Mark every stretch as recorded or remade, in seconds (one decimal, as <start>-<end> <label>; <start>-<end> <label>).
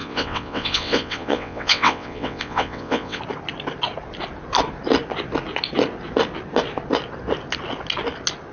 0.0-3.2 remade; 3.2-8.5 recorded